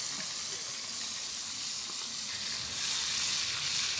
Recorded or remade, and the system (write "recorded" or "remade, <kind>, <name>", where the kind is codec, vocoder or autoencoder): recorded